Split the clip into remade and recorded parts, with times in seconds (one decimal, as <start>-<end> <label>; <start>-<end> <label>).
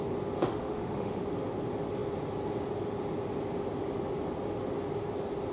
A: 0.0-0.5 recorded; 0.5-1.2 remade; 1.2-5.5 recorded